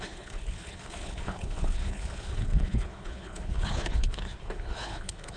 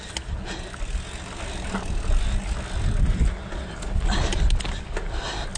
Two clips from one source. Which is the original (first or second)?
second